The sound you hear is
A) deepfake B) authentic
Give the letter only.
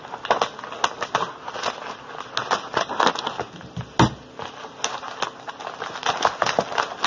B